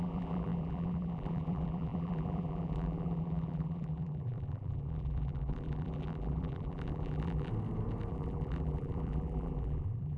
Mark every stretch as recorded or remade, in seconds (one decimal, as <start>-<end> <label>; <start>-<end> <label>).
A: 0.0-7.5 remade; 7.5-8.1 recorded; 8.1-10.2 remade